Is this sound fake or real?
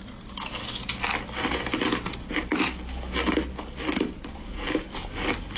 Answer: real